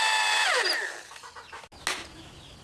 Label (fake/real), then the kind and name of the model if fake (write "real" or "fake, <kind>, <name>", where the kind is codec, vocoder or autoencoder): real